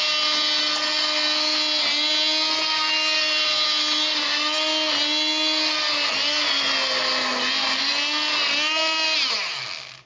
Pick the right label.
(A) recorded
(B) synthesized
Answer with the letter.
A